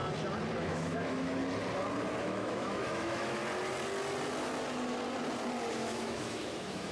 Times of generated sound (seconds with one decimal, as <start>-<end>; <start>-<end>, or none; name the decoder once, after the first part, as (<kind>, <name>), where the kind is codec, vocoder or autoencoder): 0.6-1.4 (autoencoder, DAC-VAE); 2.2-3.4; 5.7-6.9